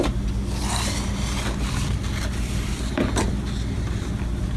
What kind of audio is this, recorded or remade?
recorded